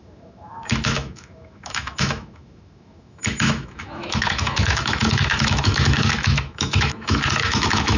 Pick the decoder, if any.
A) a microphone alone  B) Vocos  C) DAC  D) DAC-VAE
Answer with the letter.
D